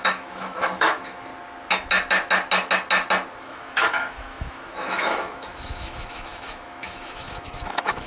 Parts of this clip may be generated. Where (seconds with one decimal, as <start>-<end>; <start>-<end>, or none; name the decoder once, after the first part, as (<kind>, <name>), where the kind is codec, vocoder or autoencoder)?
0.0-1.3 (autoencoder, DAC-VAE); 3.4-8.1